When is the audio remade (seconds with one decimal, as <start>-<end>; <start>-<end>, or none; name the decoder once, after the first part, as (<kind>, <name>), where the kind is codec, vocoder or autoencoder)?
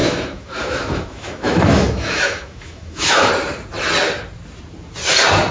0.0-3.3 (autoencoder, DAC-VAE)